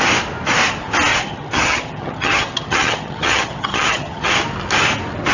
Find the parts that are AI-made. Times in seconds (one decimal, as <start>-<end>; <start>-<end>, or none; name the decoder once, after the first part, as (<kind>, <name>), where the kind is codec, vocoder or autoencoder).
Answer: 1.1-4.3 (vocoder, HiFi-GAN)